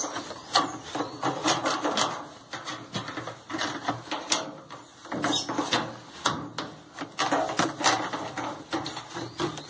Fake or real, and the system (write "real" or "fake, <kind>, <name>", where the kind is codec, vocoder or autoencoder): real